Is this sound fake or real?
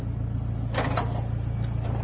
real